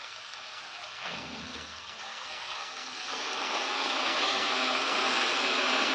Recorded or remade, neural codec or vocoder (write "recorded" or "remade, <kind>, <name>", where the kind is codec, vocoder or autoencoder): remade, codec, SNAC